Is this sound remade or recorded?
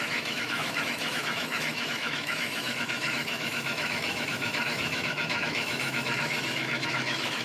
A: remade